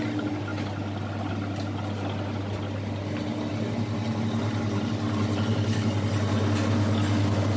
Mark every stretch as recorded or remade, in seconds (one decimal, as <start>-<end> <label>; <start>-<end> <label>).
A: 0.0-7.6 recorded

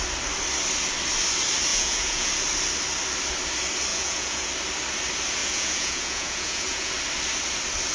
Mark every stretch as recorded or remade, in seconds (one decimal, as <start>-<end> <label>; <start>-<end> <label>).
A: 0.0-1.7 recorded; 1.7-2.3 remade; 2.3-3.9 recorded; 3.9-4.5 remade; 4.5-5.4 recorded; 5.4-6.9 remade; 6.9-7.9 recorded